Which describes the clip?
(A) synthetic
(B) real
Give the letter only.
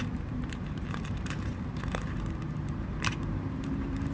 A